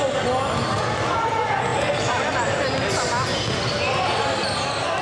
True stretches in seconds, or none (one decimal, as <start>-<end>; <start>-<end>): 0.0-5.0